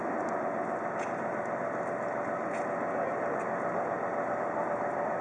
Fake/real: real